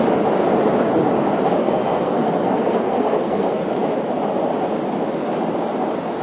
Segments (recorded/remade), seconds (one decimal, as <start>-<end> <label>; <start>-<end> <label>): 0.0-1.6 recorded; 1.6-3.6 remade; 3.6-6.2 recorded